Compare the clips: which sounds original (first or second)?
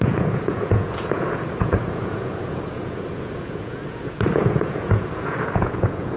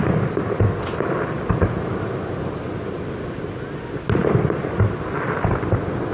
second